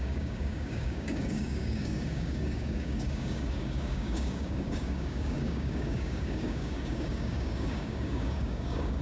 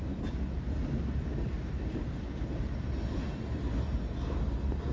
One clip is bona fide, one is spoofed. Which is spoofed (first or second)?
first